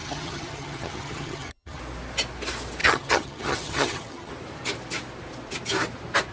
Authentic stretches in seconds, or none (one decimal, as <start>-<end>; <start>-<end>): 1.8-2.8; 4.3-6.3

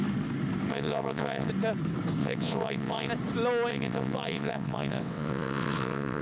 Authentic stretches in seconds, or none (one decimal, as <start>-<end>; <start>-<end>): 0.0-0.7; 1.5-2.2; 3.1-3.7

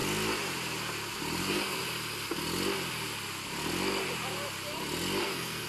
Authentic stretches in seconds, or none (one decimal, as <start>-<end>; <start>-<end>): 0.0-1.4; 1.8-5.2

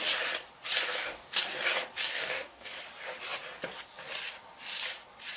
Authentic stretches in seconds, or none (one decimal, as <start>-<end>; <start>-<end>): 0.0-0.9; 1.4-2.1; 2.7-5.4

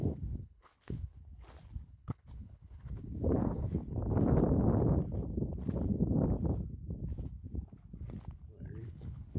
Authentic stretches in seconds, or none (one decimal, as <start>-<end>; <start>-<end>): 1.2-1.9; 4.0-8.8

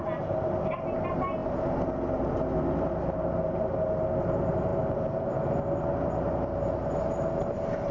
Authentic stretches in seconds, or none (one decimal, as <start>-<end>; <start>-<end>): 0.0-7.9